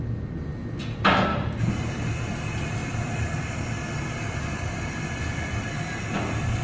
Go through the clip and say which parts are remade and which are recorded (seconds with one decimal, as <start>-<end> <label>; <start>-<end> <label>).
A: 0.0-6.6 recorded